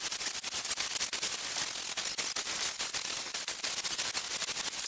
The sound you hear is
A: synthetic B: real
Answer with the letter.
B